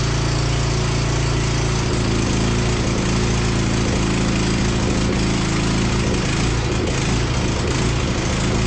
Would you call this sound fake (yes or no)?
no